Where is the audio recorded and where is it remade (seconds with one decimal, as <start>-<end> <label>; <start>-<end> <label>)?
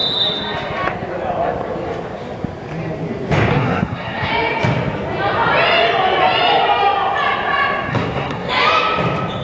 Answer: 0.0-3.5 recorded; 3.5-4.3 remade; 4.3-7.9 recorded; 7.9-8.5 remade; 8.5-9.4 recorded